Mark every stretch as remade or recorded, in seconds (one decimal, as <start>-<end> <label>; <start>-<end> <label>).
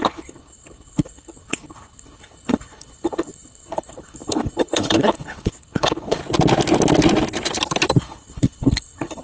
0.0-6.2 remade; 6.2-8.0 recorded; 8.0-9.2 remade